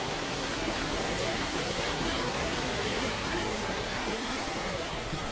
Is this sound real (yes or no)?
no